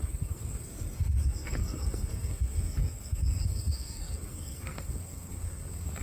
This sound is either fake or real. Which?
fake